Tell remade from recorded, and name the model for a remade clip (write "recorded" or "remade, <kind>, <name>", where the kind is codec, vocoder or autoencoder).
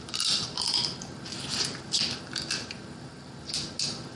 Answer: recorded